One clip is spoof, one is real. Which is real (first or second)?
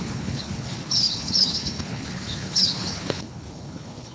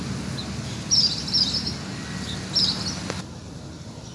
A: second